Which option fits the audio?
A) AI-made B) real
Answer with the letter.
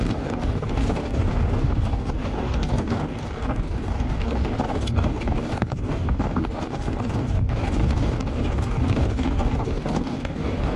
A